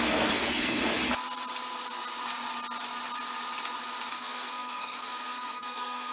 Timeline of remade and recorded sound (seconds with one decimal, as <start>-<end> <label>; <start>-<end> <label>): 0.0-0.8 remade; 0.8-4.1 recorded; 4.1-6.1 remade